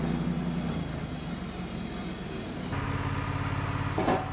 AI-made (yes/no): no